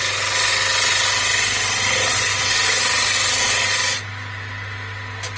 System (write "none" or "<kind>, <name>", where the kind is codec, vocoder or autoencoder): none